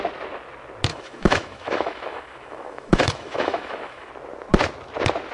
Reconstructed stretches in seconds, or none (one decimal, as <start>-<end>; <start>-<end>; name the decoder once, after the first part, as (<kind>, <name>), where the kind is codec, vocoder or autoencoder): 0.9-4.1 (autoencoder, DAC-VAE)